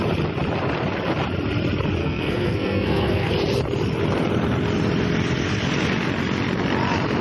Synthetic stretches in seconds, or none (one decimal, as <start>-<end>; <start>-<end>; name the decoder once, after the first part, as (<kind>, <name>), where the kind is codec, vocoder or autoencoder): 2.0-3.3 (codec, SNAC)